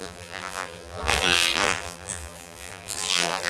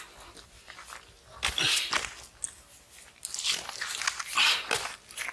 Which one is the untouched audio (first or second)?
second